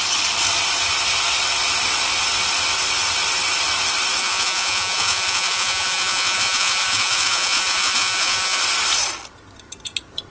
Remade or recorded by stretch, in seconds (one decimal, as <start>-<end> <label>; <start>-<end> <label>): 0.0-4.2 recorded; 4.2-8.6 remade; 8.6-10.3 recorded

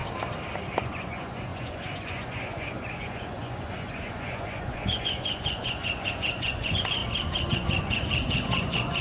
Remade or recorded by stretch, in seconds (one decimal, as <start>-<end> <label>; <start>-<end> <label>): 0.0-0.8 recorded; 0.8-7.0 remade; 7.0-7.5 recorded; 7.5-9.0 remade

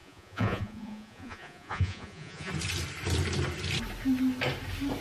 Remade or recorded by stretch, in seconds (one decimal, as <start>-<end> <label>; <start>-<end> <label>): 0.0-2.5 remade; 2.5-5.0 recorded

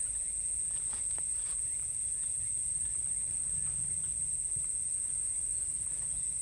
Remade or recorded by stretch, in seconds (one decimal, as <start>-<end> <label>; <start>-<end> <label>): 0.0-2.7 remade; 2.7-6.4 recorded

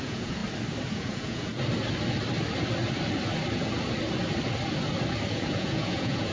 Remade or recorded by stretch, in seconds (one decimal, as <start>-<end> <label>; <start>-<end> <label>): 0.0-0.4 remade; 0.4-0.9 recorded; 0.9-1.5 remade; 1.5-5.3 recorded; 5.3-6.3 remade

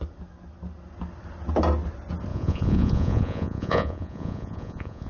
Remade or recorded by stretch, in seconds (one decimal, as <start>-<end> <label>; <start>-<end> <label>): 0.0-2.3 recorded; 2.3-5.1 remade